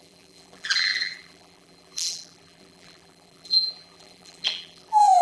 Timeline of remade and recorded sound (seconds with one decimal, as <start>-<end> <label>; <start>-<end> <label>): 0.0-5.2 remade